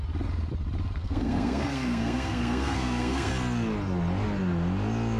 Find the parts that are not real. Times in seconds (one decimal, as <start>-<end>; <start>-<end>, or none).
1.0-3.3

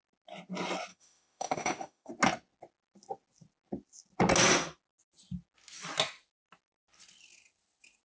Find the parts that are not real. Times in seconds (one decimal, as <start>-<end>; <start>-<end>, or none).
0.9-2.1